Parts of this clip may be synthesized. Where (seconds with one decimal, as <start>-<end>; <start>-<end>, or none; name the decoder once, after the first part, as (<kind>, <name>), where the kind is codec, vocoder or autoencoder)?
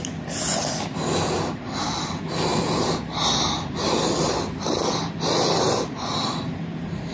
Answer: none